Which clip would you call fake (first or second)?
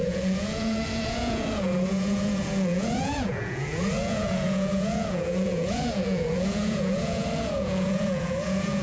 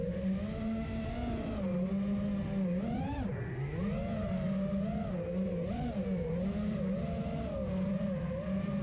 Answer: first